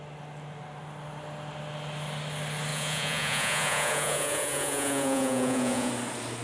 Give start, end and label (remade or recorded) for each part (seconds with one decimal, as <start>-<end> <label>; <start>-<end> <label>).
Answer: 0.0-2.7 recorded; 2.7-5.9 remade; 5.9-6.4 recorded